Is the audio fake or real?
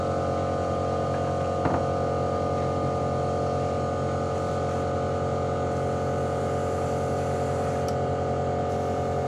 real